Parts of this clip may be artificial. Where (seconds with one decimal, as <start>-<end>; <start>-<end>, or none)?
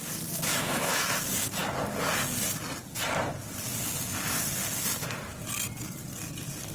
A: 0.5-1.0